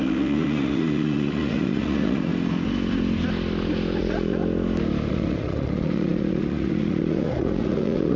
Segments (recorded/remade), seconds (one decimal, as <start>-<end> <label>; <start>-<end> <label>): 0.0-2.3 remade; 2.3-4.0 recorded; 4.0-4.4 remade; 4.4-5.1 recorded; 5.1-8.2 remade